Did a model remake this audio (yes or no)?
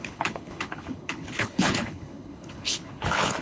yes